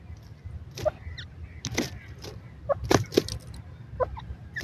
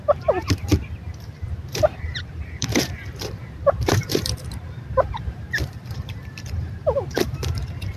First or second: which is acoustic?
first